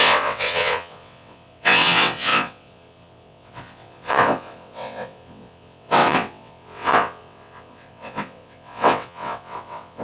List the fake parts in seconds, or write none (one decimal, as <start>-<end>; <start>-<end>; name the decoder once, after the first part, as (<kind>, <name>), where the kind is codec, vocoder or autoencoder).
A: 0.0-10.0 (vocoder, WaveNeXt)